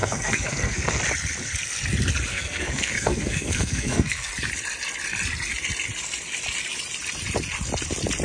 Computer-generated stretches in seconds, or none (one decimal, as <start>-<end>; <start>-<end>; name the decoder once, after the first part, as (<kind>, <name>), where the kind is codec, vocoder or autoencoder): 0.0-1.0 (codec, SNAC); 2.3-4.3